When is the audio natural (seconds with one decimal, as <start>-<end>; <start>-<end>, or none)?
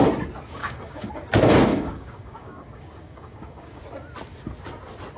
0.0-0.6; 1.1-1.7; 3.8-5.2